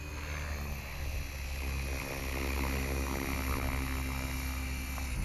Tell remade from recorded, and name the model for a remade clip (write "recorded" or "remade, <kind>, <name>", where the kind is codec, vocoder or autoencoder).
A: recorded